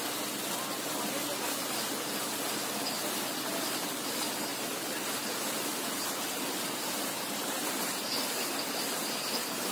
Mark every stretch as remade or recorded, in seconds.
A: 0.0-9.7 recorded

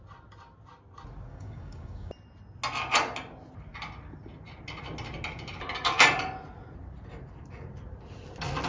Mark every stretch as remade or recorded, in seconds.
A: 0.0-1.3 recorded; 1.3-2.1 remade; 2.1-8.7 recorded